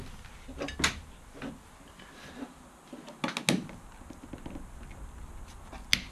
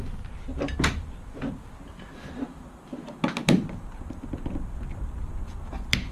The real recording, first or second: first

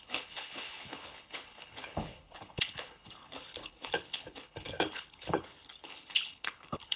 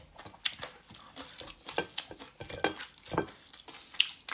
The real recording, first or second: second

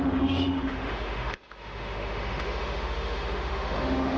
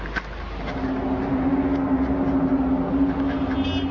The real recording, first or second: second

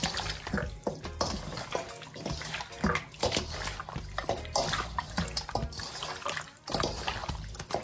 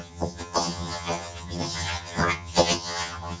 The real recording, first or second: first